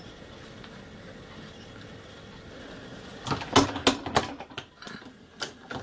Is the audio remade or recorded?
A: recorded